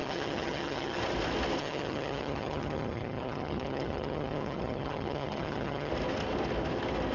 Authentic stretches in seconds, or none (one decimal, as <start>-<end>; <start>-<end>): 1.0-1.6; 5.9-7.1